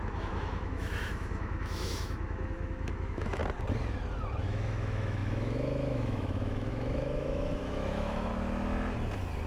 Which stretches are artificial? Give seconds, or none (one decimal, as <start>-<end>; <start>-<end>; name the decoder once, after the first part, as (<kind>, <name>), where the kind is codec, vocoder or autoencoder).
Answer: 0.0-3.4 (autoencoder, DAC-VAE); 4.4-8.3